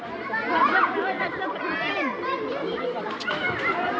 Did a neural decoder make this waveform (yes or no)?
yes